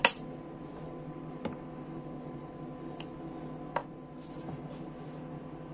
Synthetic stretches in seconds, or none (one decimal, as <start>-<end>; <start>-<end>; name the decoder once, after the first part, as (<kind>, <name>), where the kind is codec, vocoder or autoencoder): none